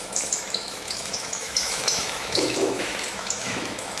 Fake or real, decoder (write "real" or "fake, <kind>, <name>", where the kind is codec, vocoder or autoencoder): fake, autoencoder, DAC-VAE